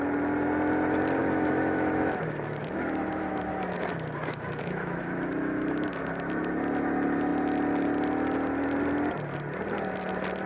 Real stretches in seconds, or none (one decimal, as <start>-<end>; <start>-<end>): 0.0-1.2; 5.9-10.5